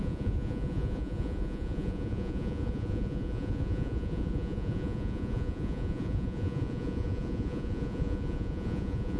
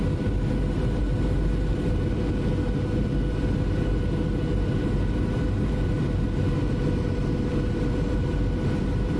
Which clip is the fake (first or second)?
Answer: first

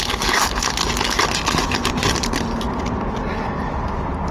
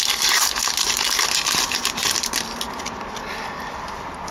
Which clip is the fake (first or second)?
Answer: second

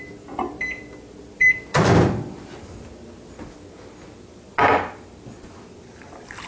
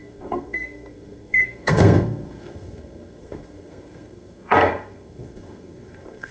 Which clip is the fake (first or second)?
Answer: second